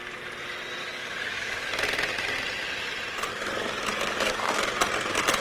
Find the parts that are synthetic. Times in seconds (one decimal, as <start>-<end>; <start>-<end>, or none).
0.8-1.7; 3.9-4.6